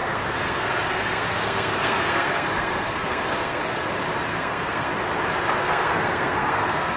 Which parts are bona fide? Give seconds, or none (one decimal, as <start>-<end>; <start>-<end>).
3.6-4.3; 4.9-5.6